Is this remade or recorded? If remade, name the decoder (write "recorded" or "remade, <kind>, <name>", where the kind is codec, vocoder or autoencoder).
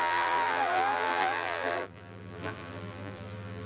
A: remade, vocoder, BigVGAN v2